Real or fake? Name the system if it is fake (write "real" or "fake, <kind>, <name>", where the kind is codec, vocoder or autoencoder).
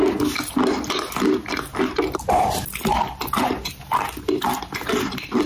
real